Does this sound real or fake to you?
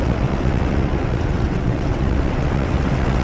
fake